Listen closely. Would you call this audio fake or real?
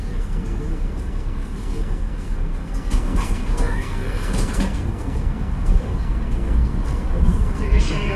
fake